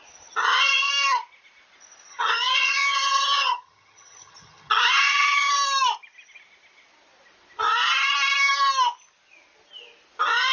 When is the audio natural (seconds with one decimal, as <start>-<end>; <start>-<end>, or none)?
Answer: 0.0-0.4; 0.9-2.1; 5.5-10.5